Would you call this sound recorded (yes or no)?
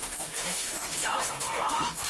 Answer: no